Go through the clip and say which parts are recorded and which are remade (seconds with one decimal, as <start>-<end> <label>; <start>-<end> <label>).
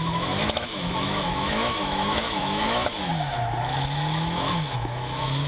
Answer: 0.0-3.1 remade; 3.1-3.6 recorded; 3.6-5.5 remade